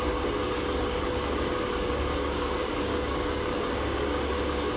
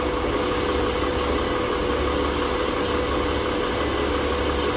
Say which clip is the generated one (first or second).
first